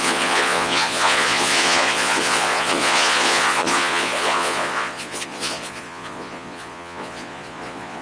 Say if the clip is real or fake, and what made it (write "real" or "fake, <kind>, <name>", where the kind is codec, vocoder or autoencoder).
fake, vocoder, Vocos